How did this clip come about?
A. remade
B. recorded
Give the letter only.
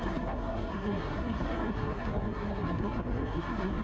A